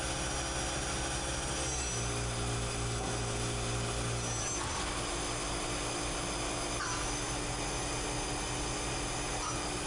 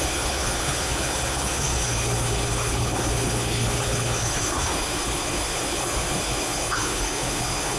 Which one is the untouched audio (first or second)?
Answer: first